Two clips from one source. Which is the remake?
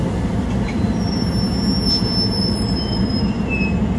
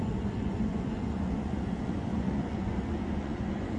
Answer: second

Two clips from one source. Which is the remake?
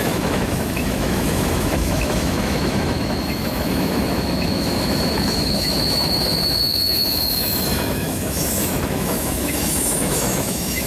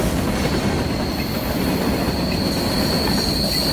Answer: first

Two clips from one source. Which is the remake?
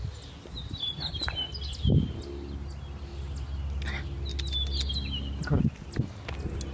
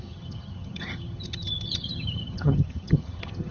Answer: second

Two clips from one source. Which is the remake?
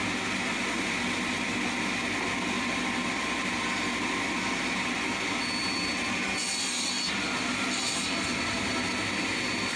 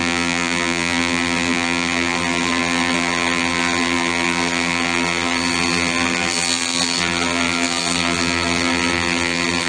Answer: second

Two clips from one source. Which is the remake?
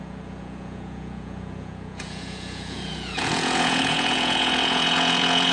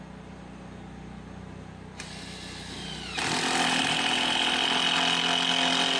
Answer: first